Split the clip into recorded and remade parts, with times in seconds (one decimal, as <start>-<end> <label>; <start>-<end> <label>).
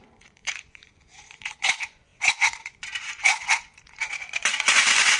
0.0-5.2 remade